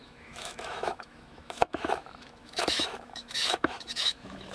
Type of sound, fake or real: fake